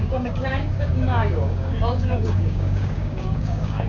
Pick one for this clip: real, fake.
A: fake